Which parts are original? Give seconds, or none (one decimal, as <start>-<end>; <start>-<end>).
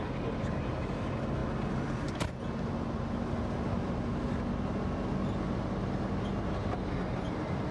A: 0.0-7.7